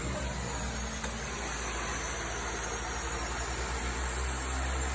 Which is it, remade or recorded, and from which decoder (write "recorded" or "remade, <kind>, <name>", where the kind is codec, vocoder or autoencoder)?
recorded